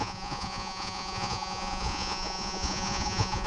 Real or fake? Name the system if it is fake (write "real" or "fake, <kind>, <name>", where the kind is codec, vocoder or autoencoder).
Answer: fake, vocoder, Vocos